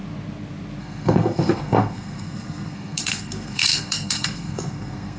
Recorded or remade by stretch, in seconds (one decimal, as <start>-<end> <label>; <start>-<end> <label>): 0.0-0.8 recorded; 0.8-5.2 remade